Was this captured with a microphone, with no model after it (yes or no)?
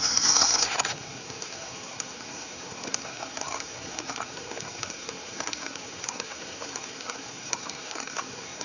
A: no